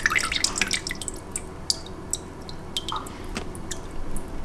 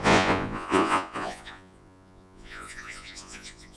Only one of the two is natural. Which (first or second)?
first